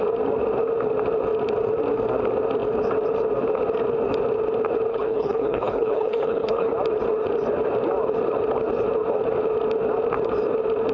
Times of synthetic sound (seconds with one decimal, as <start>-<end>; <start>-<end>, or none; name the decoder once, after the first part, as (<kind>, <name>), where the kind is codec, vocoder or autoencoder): 4.9-6.7 (codec, HILCodec)